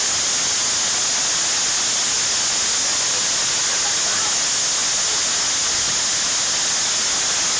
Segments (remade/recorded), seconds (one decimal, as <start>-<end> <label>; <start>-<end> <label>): 0.0-7.6 recorded